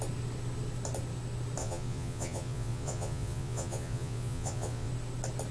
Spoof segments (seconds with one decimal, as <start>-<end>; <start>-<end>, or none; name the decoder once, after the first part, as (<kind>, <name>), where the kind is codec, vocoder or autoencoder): 1.6-4.9 (vocoder, Vocos)